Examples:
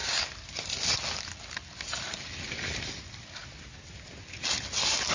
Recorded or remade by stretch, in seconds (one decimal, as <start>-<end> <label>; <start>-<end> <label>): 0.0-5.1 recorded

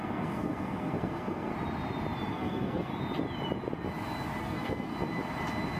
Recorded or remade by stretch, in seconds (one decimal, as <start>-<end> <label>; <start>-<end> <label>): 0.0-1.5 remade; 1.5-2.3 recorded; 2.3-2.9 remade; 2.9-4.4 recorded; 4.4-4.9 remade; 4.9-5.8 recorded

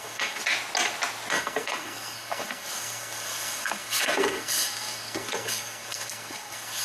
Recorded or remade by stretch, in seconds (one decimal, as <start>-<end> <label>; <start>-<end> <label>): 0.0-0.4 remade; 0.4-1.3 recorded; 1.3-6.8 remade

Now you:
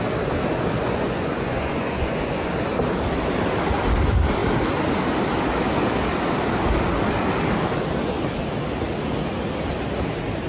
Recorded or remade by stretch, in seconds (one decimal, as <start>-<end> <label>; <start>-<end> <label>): 0.0-0.8 recorded; 0.8-2.5 remade; 2.5-10.5 recorded

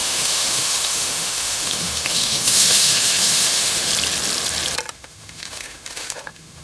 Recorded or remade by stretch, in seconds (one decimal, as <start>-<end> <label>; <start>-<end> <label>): 0.0-3.9 remade; 3.9-4.9 recorded; 4.9-6.6 remade

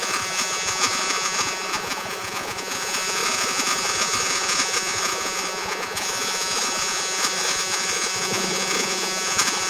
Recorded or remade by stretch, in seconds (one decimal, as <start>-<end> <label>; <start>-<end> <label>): 0.0-9.7 remade